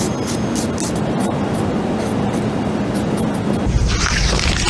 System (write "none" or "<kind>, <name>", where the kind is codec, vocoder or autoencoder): none